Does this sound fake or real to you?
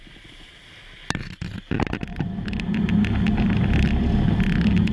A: real